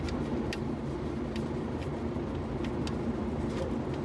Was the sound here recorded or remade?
recorded